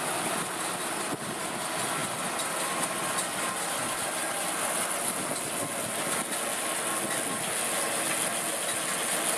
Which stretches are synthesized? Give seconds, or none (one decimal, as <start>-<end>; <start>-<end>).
none